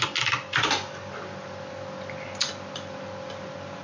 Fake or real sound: real